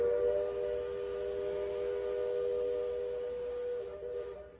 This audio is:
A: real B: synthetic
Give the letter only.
A